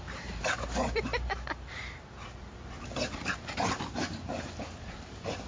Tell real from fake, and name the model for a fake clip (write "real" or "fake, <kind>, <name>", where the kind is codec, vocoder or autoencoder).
fake, vocoder, BigVGAN v2